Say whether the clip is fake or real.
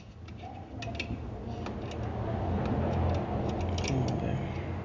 real